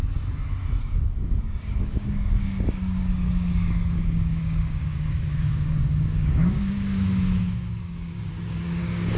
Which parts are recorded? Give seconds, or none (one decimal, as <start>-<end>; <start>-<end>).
0.0-0.8